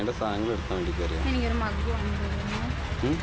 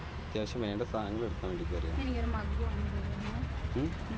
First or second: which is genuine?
first